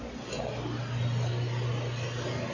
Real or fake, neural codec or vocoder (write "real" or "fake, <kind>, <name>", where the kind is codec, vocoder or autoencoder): real